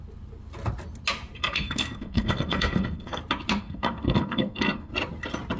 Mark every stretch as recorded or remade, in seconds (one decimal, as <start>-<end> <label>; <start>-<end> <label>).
0.0-1.4 recorded; 1.4-3.2 remade; 3.2-3.6 recorded; 3.6-4.9 remade; 4.9-5.6 recorded